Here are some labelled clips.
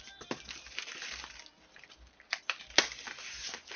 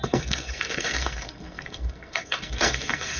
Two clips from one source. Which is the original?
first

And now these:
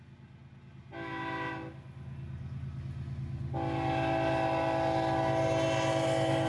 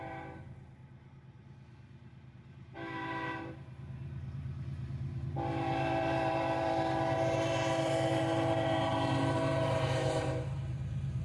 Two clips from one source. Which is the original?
first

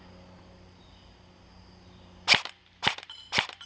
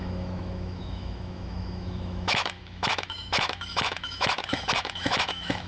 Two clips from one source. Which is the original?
first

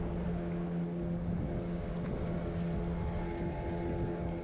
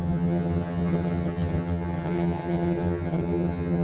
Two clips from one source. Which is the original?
first